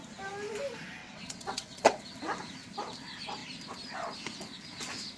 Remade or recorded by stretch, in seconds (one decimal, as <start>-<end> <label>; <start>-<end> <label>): 0.0-1.0 recorded; 1.0-2.0 remade; 2.0-5.2 recorded